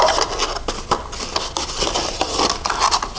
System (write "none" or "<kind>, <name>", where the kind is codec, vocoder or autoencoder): none